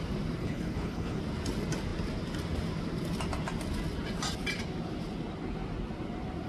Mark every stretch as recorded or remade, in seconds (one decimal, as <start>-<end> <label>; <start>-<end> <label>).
0.0-0.4 recorded; 0.4-1.2 remade; 1.2-6.5 recorded